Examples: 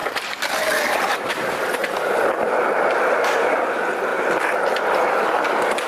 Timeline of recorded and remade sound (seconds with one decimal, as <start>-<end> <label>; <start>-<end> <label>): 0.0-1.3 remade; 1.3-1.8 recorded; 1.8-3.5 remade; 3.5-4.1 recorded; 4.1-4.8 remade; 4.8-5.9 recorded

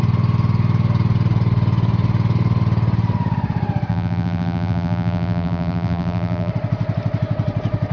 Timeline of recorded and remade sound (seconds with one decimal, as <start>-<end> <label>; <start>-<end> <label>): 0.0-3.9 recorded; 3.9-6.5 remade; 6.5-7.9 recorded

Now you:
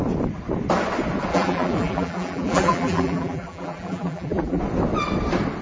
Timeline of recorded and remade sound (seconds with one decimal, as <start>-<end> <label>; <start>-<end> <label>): 0.0-1.3 recorded; 1.3-4.6 remade; 4.6-5.6 recorded

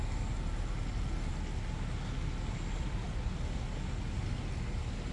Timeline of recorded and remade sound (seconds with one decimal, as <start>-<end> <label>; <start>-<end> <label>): 0.0-5.1 recorded